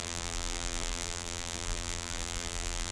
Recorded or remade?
remade